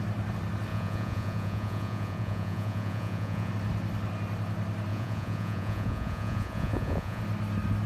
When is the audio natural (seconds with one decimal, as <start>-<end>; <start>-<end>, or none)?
0.0-0.7; 3.5-4.9; 7.2-7.9